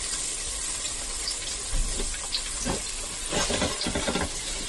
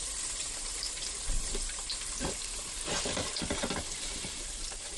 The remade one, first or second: second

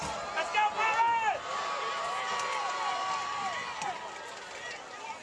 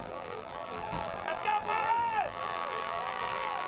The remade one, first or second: second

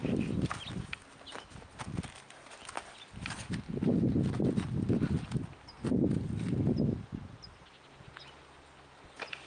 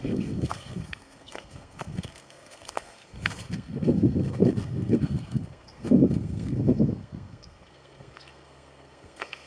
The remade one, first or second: second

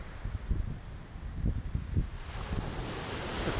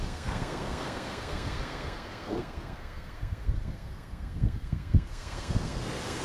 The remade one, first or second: second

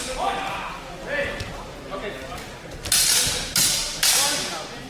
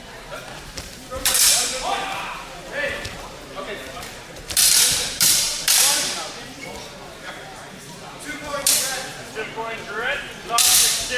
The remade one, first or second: second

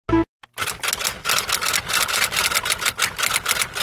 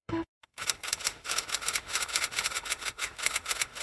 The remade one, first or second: second